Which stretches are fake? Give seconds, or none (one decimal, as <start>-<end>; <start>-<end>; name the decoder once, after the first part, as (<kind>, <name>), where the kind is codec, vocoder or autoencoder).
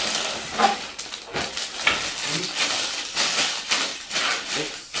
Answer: 1.3-4.3 (vocoder, BigVGAN v2)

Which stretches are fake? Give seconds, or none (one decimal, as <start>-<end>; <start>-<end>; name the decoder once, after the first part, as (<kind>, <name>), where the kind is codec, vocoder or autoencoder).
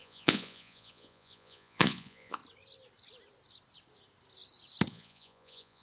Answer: 0.0-2.4 (vocoder, Vocos); 4.9-5.8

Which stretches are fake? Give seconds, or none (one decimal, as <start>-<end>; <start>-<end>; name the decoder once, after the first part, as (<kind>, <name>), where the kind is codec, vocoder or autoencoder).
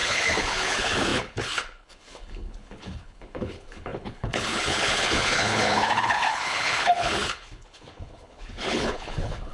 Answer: 0.0-9.5 (codec, HILCodec)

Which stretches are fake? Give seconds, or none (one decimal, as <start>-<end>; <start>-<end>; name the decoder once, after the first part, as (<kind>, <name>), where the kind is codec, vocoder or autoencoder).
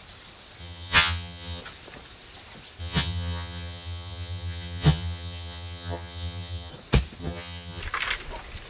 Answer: 0.6-1.6 (vocoder, HiFi-GAN); 2.8-6.7; 7.2-7.8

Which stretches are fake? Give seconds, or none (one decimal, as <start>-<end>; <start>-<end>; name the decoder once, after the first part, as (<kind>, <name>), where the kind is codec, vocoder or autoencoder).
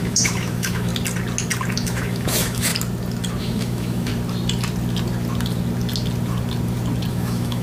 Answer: 0.0-0.9 (autoencoder, DAC-VAE); 1.7-2.7; 3.4-4.1; 7.1-7.6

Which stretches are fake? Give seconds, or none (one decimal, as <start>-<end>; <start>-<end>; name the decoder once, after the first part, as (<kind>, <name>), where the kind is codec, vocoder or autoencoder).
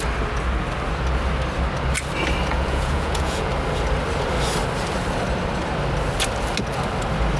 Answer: 2.5-3.5 (vocoder, Vocos)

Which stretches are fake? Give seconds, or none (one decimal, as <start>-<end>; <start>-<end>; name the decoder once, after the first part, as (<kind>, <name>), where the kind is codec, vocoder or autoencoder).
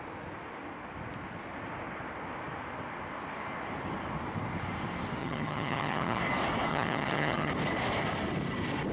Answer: 5.2-6.2 (vocoder, HiFi-GAN); 6.7-7.5